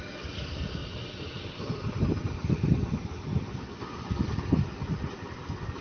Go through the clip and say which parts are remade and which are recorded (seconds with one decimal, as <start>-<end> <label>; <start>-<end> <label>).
0.0-0.8 recorded; 0.8-2.2 remade; 2.2-5.8 recorded